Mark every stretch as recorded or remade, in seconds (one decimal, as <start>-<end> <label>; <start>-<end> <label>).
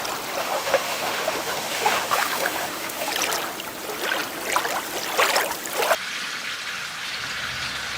0.0-0.4 recorded; 0.4-3.1 remade; 3.1-8.0 recorded